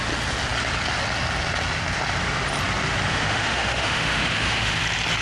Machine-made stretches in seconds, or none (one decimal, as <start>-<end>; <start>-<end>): 3.1-4.8